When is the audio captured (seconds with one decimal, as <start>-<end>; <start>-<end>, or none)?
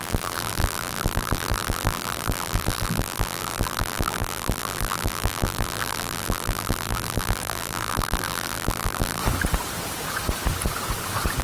9.2-11.4